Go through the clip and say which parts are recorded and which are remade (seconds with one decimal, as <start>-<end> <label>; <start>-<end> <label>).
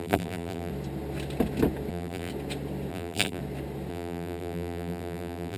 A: 0.0-0.7 remade; 0.7-1.9 recorded; 1.9-2.3 remade; 2.3-2.9 recorded; 2.9-3.4 remade; 3.4-3.9 recorded; 3.9-5.6 remade